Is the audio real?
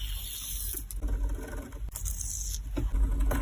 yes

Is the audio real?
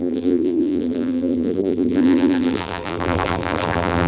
no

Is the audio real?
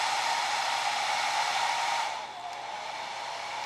no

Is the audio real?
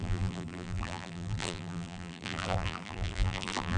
no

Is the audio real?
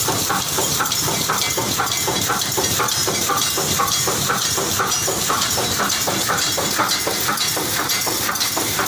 no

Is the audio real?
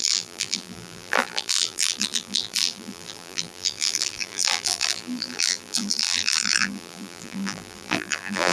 no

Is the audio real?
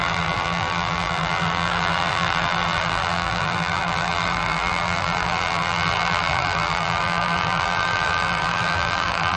no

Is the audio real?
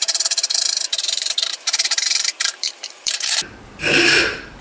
no